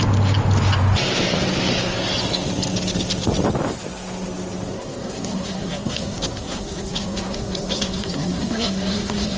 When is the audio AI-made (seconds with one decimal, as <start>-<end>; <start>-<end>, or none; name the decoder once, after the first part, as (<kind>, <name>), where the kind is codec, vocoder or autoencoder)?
4.7-9.4 (codec, SNAC)